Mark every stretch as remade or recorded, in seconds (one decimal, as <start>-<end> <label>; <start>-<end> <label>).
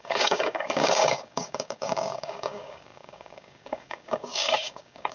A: 0.0-5.1 remade